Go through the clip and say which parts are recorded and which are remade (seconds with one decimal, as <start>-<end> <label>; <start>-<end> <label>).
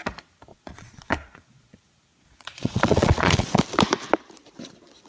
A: 0.0-0.5 recorded; 0.5-3.6 remade; 3.6-5.1 recorded